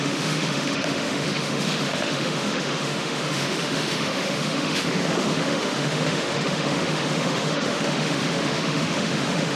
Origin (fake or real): fake